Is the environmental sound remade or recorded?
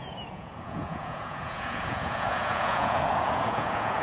remade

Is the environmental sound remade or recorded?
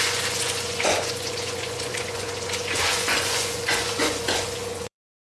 remade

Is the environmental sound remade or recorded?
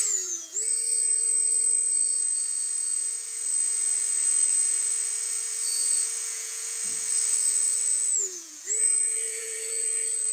remade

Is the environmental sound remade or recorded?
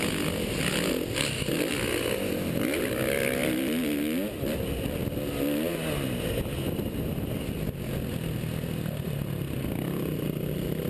recorded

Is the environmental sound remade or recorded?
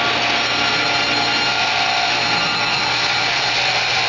recorded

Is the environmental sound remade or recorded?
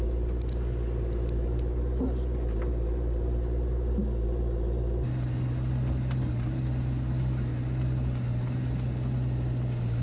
recorded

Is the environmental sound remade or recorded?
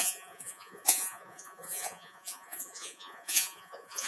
remade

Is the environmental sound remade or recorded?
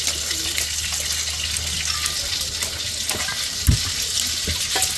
recorded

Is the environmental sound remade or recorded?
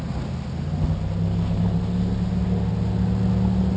recorded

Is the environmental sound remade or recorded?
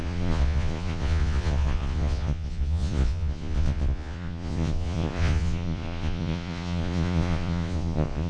remade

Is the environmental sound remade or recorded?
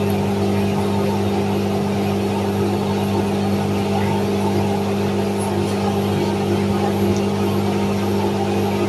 recorded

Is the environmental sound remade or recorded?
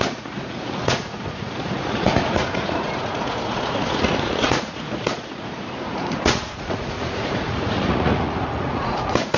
remade